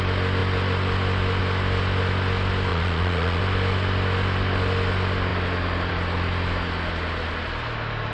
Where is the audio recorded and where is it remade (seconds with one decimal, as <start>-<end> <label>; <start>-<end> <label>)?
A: 0.0-2.7 recorded; 2.7-3.4 remade; 3.4-8.1 recorded